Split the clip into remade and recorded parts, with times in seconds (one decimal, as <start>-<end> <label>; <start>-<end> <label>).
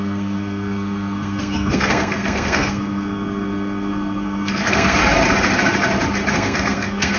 0.0-5.0 remade; 5.0-6.3 recorded; 6.3-7.2 remade